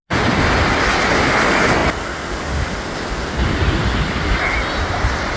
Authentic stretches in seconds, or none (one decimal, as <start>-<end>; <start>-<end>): 0.0-5.4